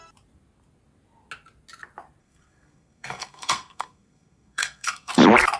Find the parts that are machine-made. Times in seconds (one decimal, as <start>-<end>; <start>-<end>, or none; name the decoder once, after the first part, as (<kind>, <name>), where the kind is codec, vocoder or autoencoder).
2.2-5.1 (codec, SNAC)